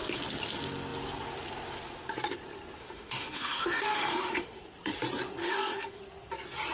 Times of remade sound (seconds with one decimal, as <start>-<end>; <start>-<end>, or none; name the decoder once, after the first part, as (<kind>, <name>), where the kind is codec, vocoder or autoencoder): 2.8-4.6 (autoencoder, DAC-VAE); 5.4-6.0